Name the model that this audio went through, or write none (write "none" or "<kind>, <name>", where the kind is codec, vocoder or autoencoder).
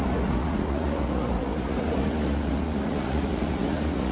vocoder, Vocos